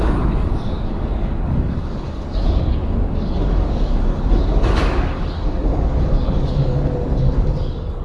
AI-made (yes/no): yes